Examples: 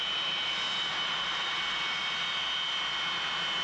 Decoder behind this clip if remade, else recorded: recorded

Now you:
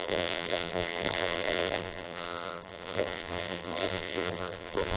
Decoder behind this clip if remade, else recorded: remade, vocoder, BigVGAN v2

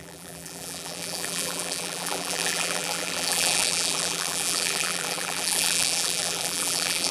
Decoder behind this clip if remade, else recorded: remade, vocoder, BigVGAN v2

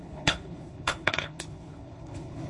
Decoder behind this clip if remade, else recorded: remade, codec, HILCodec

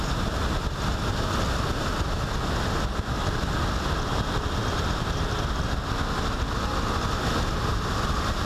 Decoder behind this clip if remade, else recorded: recorded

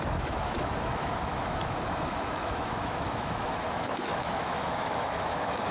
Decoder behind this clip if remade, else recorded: remade, autoencoder, DAC-VAE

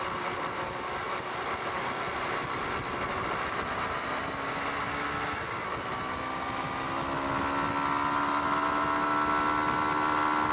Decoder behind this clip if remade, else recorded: recorded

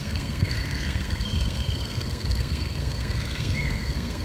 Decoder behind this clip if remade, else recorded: remade, codec, SNAC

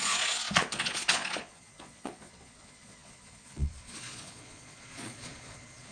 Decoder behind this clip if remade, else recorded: remade, vocoder, Vocos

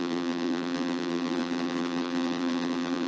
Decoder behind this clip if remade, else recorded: remade, vocoder, BigVGAN v2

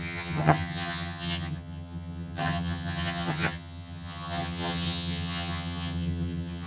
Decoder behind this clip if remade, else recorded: remade, vocoder, HiFi-GAN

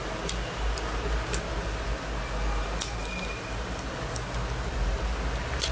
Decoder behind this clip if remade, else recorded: recorded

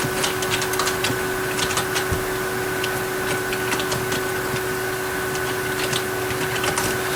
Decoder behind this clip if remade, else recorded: recorded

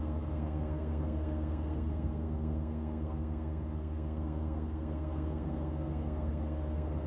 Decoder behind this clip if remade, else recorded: remade, codec, SNAC